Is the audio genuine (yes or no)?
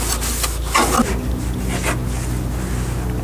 yes